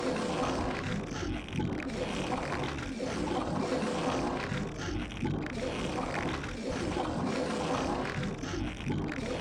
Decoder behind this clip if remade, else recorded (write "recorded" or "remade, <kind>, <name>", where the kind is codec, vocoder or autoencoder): recorded